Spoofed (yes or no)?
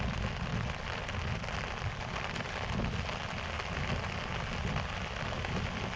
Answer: no